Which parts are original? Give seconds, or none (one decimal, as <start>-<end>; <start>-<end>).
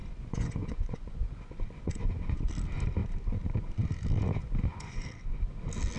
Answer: 2.5-4.4; 5.0-6.0